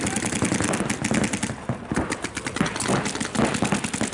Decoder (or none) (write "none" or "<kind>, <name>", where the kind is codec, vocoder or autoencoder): none